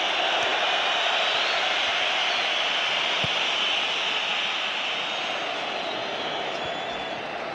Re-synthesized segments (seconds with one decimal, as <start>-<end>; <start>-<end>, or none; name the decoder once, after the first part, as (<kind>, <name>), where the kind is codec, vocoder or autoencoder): none